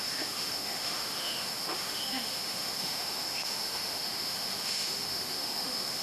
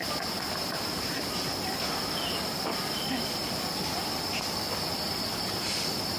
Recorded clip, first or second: second